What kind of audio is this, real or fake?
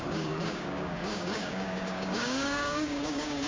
fake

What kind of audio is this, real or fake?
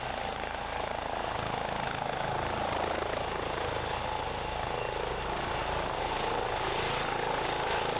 real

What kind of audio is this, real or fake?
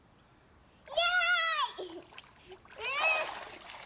real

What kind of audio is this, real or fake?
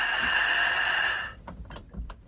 real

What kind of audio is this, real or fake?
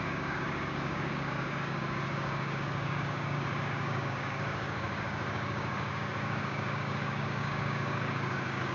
fake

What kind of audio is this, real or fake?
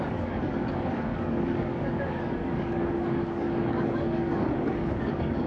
fake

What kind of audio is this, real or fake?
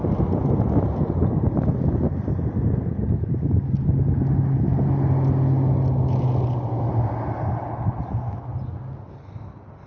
real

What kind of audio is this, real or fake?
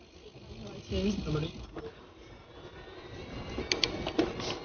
real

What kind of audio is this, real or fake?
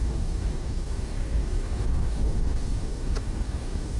fake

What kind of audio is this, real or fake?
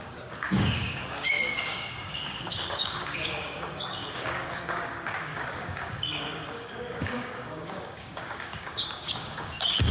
fake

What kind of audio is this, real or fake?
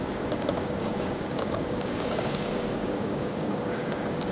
fake